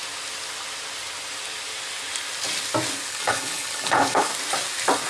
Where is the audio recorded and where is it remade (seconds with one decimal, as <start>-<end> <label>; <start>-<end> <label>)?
0.0-3.1 recorded; 3.1-4.3 remade; 4.3-5.1 recorded